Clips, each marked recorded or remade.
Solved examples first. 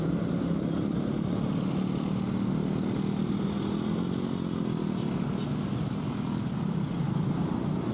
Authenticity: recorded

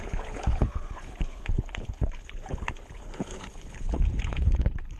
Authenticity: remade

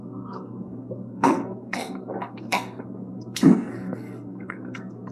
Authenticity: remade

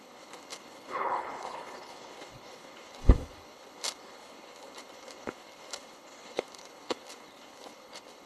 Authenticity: remade